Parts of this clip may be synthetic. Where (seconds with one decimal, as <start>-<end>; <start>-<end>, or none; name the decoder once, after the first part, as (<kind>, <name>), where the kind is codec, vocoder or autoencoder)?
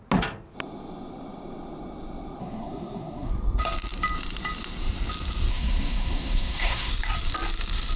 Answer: 2.4-3.3 (codec, SNAC); 5.5-6.9